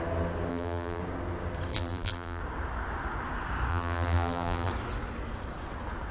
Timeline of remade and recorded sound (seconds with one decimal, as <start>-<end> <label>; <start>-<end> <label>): 0.0-0.5 recorded; 0.5-1.0 remade; 1.0-1.7 recorded; 1.7-2.4 remade; 2.4-3.7 recorded; 3.7-4.7 remade; 4.7-6.1 recorded